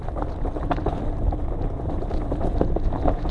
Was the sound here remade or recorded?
recorded